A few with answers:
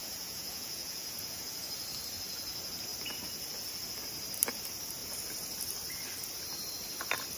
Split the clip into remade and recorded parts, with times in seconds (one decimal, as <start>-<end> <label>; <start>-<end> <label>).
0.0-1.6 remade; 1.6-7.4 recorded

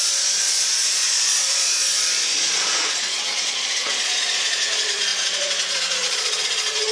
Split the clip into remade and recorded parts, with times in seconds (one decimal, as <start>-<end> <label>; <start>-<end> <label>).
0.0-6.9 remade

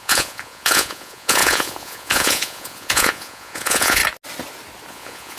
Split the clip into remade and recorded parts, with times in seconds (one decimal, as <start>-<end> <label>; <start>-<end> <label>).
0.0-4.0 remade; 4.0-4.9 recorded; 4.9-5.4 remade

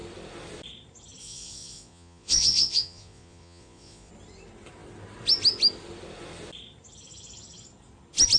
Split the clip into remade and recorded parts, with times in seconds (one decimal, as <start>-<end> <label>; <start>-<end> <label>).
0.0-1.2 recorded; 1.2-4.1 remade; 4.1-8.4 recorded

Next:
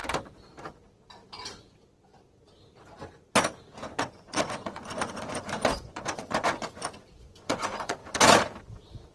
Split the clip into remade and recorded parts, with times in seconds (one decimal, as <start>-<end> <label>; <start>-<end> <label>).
0.0-3.9 recorded; 3.9-8.0 remade; 8.0-8.6 recorded; 8.6-9.1 remade

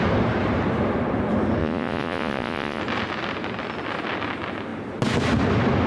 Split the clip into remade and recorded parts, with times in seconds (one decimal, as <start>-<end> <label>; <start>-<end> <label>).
0.0-1.6 recorded; 1.6-2.8 remade; 2.8-5.9 recorded